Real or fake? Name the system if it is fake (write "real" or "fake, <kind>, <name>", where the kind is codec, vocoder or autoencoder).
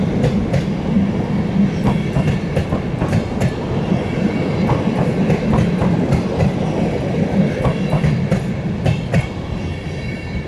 real